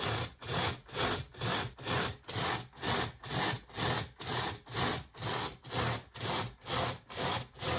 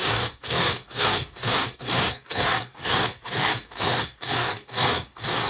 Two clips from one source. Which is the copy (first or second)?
second